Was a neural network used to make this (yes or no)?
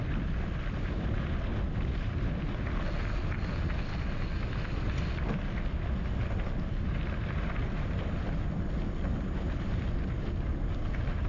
no